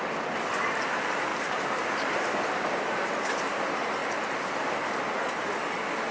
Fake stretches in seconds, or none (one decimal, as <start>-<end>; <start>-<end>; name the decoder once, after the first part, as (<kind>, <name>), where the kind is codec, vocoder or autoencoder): 1.3-2.3 (vocoder, BigVGAN v2)